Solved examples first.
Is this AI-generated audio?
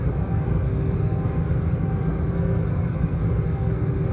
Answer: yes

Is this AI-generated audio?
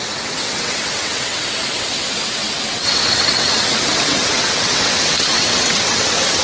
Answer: yes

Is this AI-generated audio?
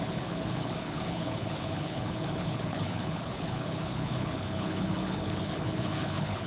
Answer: yes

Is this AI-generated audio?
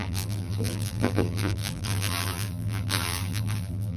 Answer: yes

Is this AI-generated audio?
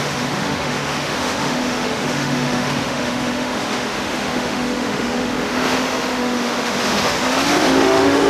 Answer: yes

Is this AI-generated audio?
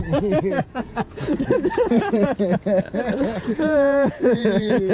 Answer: yes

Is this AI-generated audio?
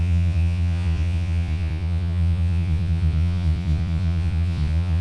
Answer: yes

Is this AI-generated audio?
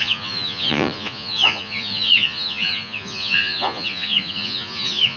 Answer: yes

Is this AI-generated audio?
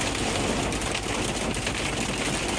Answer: no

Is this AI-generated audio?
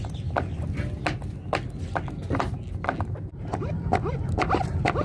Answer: no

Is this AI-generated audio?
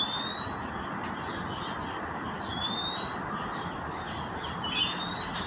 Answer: no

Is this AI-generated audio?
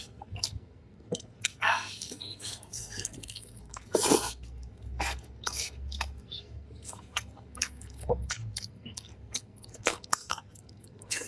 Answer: yes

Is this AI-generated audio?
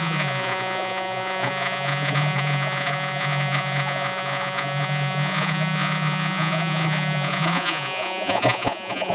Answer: yes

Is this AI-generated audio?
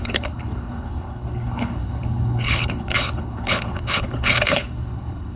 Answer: yes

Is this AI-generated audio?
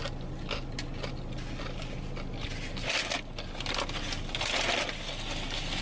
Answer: no